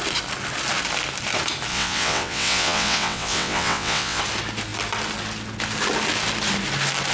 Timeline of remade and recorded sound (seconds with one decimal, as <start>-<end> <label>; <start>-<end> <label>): 0.0-1.7 recorded; 1.7-4.2 remade; 4.2-7.1 recorded